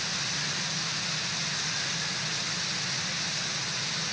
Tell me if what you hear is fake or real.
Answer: real